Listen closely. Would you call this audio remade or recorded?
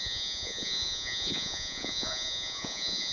remade